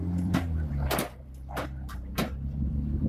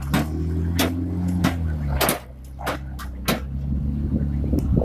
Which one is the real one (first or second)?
second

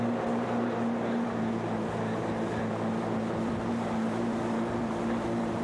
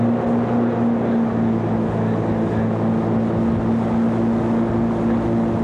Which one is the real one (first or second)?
second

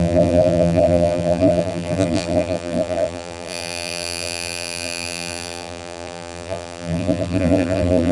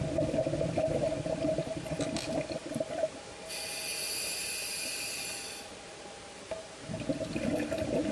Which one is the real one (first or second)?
second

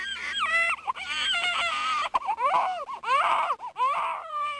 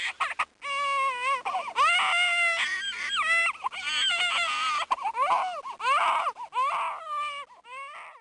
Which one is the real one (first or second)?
second